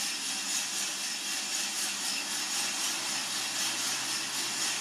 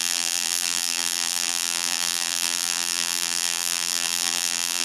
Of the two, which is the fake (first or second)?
second